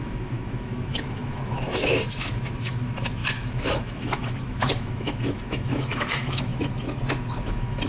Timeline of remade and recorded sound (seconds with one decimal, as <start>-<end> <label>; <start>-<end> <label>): 0.0-6.5 remade; 6.5-7.4 recorded; 7.4-7.9 remade